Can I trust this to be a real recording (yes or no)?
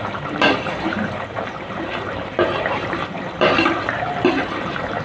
no